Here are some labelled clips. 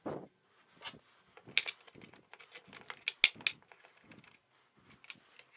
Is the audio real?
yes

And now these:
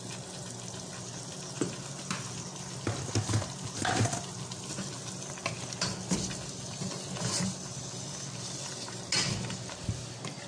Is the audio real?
yes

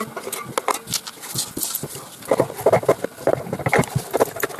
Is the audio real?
yes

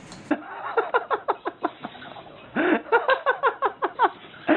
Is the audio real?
yes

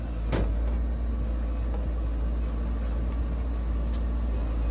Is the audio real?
yes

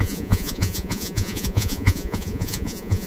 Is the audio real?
no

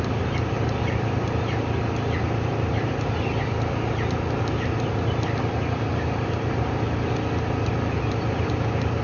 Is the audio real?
yes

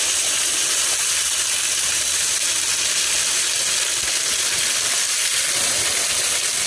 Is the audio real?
yes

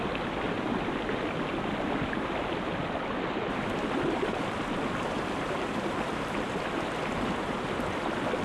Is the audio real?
yes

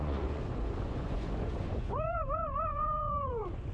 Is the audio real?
no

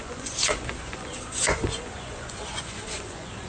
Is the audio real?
no